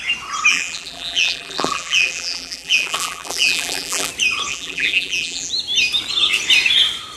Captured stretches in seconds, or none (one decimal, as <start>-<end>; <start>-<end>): 0.0-0.5; 4.1-4.5; 5.5-7.2

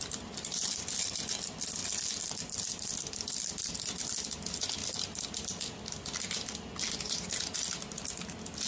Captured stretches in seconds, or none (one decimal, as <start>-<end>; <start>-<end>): 0.0-8.7

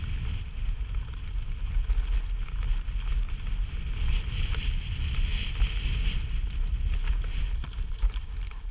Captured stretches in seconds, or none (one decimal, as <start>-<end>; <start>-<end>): 0.0-8.7

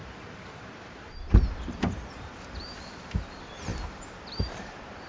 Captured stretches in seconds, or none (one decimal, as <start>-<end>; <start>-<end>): 3.1-3.7